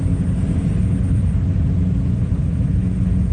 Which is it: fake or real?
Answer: real